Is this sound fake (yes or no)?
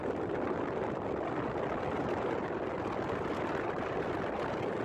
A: yes